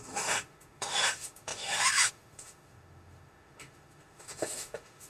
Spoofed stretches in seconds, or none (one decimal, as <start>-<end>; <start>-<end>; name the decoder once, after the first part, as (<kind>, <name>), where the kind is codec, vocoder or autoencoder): 0.0-5.1 (autoencoder, DAC-VAE)